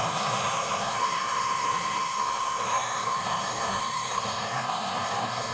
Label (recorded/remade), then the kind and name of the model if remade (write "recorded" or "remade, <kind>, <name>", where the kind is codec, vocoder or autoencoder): remade, codec, SNAC